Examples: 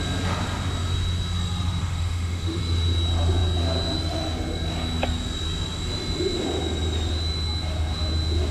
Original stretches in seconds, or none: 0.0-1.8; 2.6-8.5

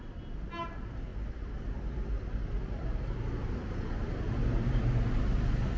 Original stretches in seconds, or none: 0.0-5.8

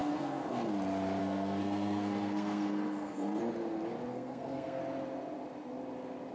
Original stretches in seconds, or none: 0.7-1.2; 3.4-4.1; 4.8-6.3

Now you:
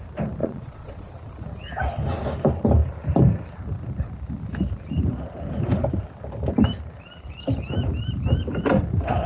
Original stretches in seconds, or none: 0.0-0.4; 1.2-9.3

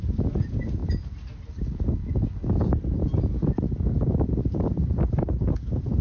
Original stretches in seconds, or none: 0.8-4.4

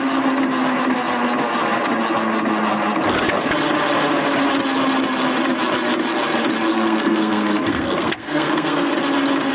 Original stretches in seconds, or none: 0.0-6.7; 8.9-9.5

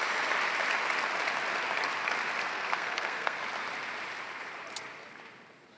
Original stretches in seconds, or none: 0.0-2.5; 3.4-5.8